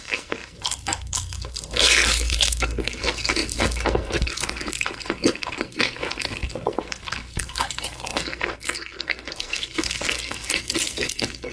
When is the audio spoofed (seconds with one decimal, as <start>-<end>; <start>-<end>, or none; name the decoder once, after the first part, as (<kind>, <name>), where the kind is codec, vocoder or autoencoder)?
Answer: 0.0-11.5 (codec, SNAC)